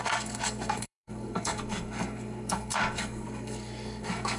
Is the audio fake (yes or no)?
yes